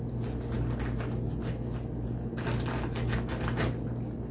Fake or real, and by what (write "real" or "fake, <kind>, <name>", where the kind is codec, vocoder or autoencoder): real